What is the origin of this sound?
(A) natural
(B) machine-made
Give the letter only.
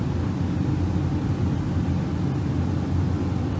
A